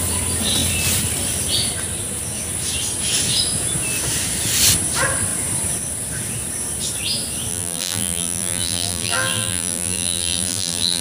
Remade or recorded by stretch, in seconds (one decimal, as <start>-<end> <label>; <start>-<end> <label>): 0.0-7.5 recorded; 7.5-11.0 remade